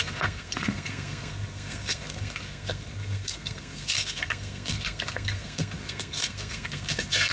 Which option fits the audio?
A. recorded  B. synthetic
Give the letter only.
B